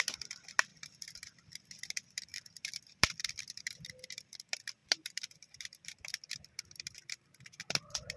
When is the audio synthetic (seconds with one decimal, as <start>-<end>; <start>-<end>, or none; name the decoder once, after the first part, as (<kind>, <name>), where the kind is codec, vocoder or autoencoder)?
0.7-4.3 (vocoder, BigVGAN v2); 4.8-8.2